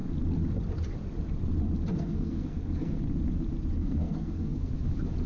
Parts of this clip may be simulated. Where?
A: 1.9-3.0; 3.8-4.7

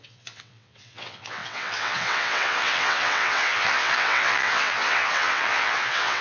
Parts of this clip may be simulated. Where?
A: 0.0-6.2

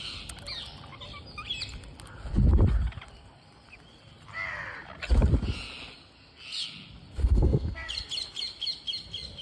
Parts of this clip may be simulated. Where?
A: 7.2-7.9

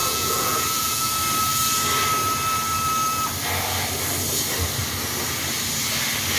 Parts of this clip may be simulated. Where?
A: 0.0-1.1